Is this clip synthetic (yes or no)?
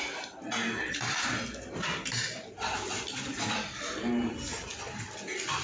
no